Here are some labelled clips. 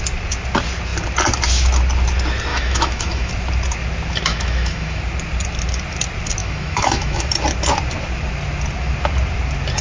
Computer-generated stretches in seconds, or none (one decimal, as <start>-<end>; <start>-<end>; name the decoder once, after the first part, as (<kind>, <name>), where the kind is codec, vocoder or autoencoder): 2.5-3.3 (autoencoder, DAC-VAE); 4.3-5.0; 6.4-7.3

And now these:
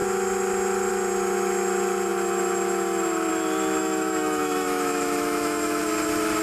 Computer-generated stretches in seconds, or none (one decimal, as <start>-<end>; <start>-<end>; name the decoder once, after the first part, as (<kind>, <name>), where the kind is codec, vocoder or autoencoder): 3.8-5.8 (autoencoder, DAC-VAE)

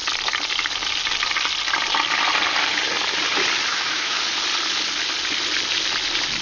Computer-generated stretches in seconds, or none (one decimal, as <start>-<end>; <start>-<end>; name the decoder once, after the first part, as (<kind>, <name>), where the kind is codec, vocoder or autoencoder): 3.7-4.2 (autoencoder, DAC-VAE)

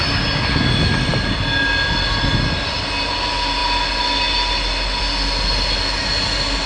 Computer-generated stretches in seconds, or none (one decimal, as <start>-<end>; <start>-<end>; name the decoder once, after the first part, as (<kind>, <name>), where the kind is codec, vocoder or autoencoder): none